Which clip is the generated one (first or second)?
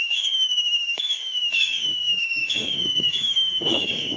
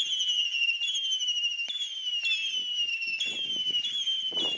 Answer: first